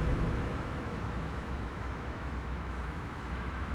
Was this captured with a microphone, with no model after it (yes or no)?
no